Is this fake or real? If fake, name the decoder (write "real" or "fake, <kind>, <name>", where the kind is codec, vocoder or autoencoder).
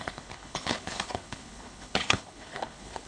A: fake, codec, HILCodec